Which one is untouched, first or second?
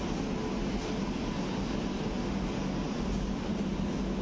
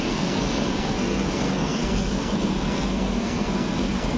first